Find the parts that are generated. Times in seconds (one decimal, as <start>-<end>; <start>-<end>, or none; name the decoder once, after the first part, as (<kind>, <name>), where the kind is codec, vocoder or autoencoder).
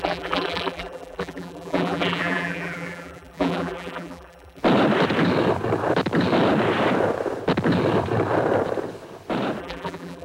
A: 0.0-4.6 (vocoder, BigVGAN v2); 9.6-10.2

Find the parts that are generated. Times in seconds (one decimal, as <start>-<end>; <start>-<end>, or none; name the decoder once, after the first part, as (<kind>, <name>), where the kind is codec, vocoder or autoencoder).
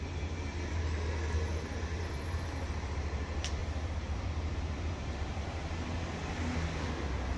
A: 3.6-4.6 (vocoder, BigVGAN v2)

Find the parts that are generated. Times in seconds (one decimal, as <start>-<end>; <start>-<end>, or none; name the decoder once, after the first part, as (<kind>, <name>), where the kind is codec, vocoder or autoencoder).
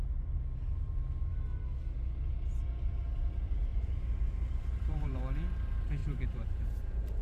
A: 3.7-5.2 (vocoder, BigVGAN v2); 6.0-7.2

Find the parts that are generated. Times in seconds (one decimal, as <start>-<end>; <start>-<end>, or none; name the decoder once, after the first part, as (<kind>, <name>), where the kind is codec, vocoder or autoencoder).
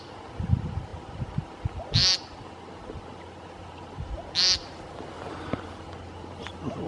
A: 0.0-6.9 (vocoder, BigVGAN v2)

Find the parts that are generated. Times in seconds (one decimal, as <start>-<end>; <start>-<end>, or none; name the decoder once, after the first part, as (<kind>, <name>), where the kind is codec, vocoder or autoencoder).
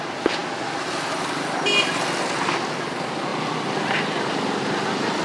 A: 3.3-4.6 (vocoder, BigVGAN v2)